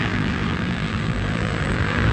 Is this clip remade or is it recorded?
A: remade